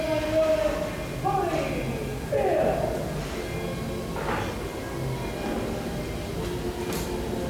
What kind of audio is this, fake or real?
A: real